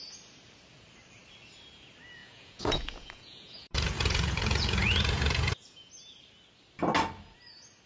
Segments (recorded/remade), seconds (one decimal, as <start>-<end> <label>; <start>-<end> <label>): 0.0-2.2 recorded; 2.2-5.9 remade; 5.9-7.9 recorded